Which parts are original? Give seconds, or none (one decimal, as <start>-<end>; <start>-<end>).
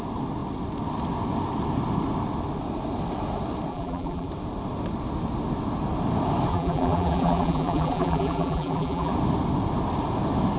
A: 0.0-3.7; 4.3-6.5; 9.1-10.6